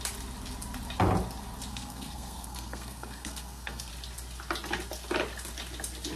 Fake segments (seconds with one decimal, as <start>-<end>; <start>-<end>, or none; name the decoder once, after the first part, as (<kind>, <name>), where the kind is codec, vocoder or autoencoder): 1.7-3.9 (codec, SNAC)